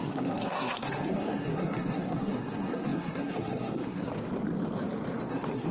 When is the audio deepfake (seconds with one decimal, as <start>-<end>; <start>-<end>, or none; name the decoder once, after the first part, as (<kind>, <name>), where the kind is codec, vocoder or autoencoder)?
0.0-4.1 (codec, SNAC); 5.3-5.7

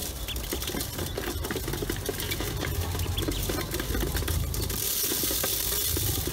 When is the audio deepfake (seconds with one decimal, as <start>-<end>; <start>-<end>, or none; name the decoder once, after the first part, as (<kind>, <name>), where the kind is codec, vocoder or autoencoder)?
4.1-4.7 (vocoder, BigVGAN v2)

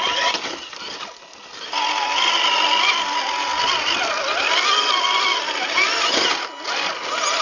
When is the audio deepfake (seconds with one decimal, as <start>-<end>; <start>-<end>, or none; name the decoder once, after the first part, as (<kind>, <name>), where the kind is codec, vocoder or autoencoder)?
none

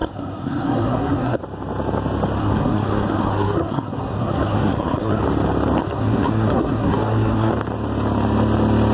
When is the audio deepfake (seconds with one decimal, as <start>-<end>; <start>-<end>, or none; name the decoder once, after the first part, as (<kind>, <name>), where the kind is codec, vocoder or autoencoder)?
0.0-1.4 (codec, SNAC); 2.4-5.2; 5.8-7.5

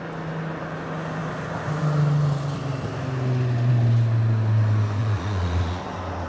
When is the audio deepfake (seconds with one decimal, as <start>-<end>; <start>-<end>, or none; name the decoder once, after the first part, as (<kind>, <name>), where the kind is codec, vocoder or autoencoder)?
5.0-5.8 (vocoder, Vocos)

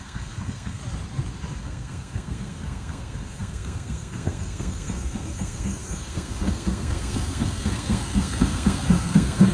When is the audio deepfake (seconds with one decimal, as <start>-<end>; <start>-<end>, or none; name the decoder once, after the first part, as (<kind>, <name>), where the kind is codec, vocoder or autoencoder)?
0.0-0.8 (codec, SNAC); 1.6-9.5